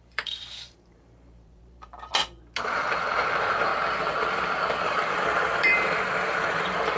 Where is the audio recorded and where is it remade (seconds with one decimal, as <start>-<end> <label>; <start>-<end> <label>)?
0.0-2.1 remade; 2.1-2.6 recorded; 2.6-3.7 remade; 3.7-4.8 recorded; 4.8-7.0 remade